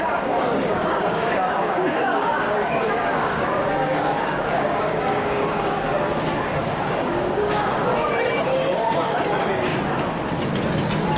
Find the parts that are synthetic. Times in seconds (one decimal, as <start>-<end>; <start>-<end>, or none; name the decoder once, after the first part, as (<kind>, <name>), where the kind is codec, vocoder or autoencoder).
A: 0.0-9.7 (codec, DAC)